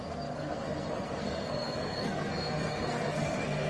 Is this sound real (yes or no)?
no